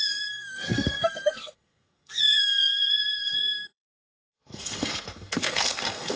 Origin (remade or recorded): remade